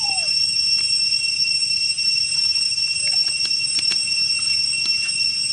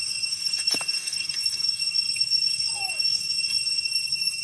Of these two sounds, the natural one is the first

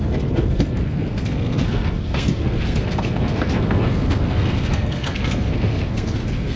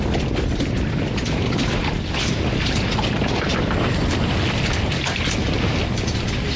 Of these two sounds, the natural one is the second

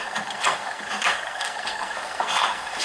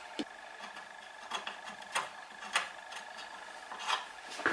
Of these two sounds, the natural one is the second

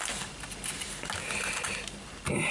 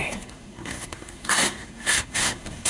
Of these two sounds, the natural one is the first